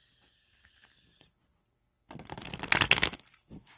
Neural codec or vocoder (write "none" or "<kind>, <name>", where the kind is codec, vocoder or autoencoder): none